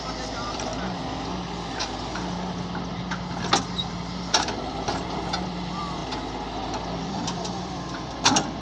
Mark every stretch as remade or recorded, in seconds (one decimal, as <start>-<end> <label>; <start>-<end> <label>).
0.0-0.7 remade; 0.7-3.6 recorded; 3.6-6.0 remade; 6.0-7.0 recorded; 7.0-8.6 remade